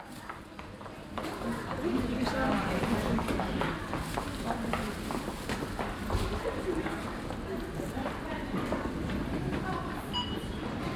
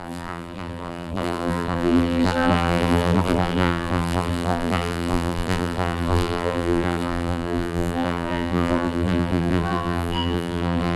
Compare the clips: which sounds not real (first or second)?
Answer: second